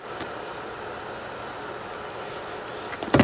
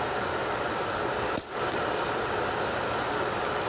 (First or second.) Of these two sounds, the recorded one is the first